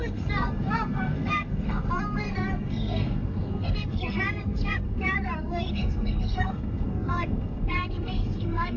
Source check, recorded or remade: remade